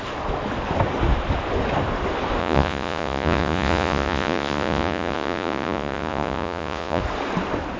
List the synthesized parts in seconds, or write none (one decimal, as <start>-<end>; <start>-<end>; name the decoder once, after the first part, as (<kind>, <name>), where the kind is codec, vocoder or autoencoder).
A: 2.4-7.0 (vocoder, Vocos)